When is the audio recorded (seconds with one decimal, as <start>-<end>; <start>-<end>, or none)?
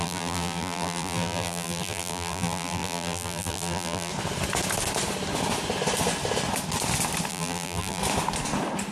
4.1-7.3; 8.0-8.9